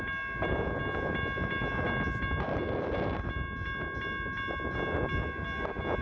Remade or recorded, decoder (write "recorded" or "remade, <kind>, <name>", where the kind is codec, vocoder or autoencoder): recorded